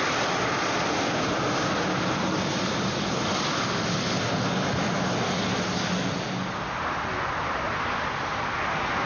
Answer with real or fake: real